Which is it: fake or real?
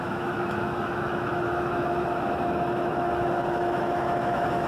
fake